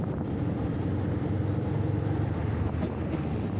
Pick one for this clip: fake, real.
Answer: real